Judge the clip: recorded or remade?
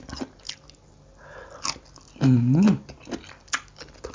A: recorded